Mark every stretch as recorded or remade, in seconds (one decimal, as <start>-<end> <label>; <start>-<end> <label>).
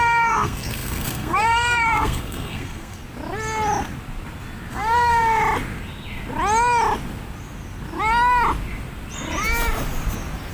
0.0-3.0 remade; 3.0-4.7 recorded; 4.7-5.4 remade; 5.4-10.5 recorded